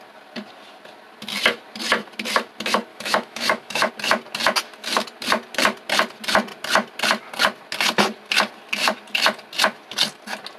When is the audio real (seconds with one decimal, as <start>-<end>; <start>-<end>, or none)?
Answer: 0.0-2.9; 3.9-10.6